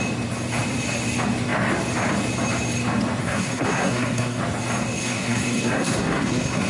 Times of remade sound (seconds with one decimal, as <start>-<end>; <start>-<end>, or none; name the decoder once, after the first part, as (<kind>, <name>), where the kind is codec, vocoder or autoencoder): 3.2-4.4 (codec, SNAC); 5.0-6.7